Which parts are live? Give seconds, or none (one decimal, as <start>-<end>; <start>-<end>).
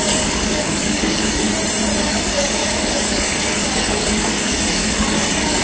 1.5-2.0